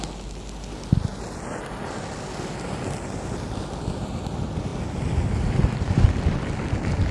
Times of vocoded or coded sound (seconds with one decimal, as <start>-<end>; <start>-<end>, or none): none